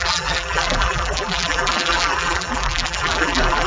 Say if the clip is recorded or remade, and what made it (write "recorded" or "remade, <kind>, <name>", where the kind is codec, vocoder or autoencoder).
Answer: remade, vocoder, BigVGAN v2